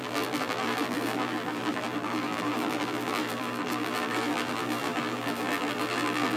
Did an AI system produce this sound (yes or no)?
yes